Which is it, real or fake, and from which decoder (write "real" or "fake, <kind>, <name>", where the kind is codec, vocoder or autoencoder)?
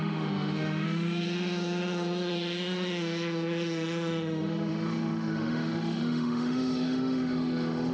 fake, autoencoder, DAC-VAE